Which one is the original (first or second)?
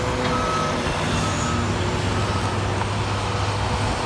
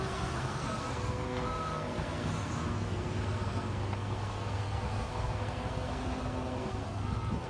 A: first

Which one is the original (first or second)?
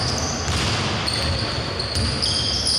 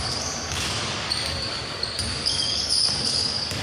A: first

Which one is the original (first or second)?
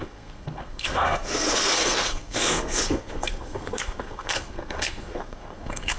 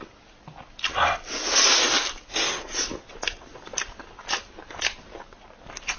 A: second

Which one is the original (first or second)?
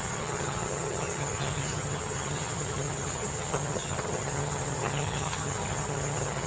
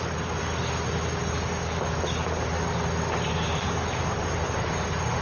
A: second